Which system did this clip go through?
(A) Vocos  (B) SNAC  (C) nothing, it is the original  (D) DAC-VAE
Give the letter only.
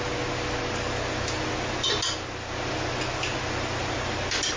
C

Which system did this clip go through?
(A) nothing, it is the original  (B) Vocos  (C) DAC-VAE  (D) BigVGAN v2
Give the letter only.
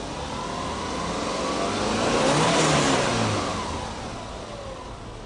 A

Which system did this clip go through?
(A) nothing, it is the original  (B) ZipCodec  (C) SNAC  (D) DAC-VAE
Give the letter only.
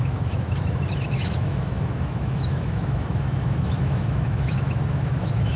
D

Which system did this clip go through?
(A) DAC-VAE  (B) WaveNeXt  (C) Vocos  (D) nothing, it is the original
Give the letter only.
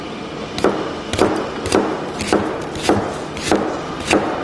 D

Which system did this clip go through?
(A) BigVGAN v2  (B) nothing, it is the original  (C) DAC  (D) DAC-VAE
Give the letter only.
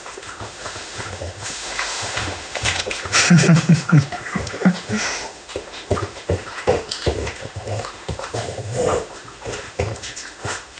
D